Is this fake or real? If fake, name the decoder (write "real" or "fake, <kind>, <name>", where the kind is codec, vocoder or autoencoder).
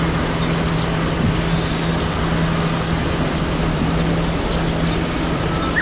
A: real